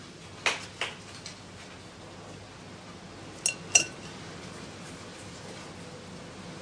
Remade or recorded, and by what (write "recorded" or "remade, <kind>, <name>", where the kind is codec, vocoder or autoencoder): recorded